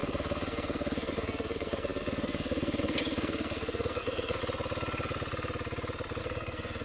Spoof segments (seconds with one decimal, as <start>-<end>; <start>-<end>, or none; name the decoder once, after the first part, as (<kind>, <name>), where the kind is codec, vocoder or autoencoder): 0.0-4.4 (codec, SNAC); 6.2-6.8